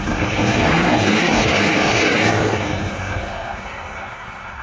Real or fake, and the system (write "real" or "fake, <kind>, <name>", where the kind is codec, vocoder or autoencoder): fake, codec, SNAC